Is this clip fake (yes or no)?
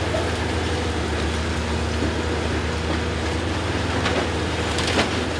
no